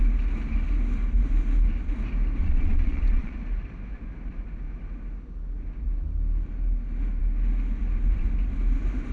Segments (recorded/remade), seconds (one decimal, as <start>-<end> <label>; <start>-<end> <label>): 0.0-2.4 recorded; 2.4-3.3 remade; 3.3-9.1 recorded